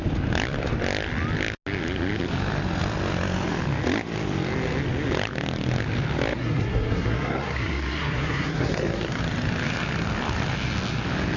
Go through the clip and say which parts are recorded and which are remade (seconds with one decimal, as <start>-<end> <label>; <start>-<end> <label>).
0.0-6.3 recorded; 6.3-9.2 remade; 9.2-11.4 recorded